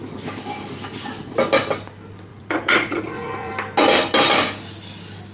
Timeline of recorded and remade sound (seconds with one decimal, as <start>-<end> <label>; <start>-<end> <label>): 0.0-2.3 recorded; 2.3-3.5 remade; 3.5-5.3 recorded